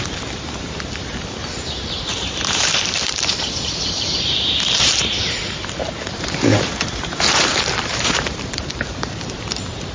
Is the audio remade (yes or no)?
yes